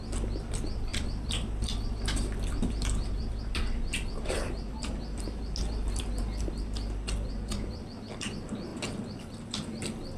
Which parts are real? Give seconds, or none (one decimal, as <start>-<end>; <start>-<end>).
0.0-0.9; 3.1-10.2